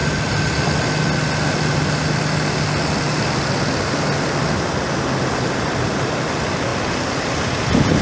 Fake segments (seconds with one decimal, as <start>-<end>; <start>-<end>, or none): none